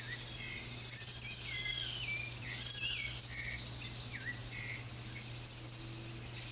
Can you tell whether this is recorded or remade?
recorded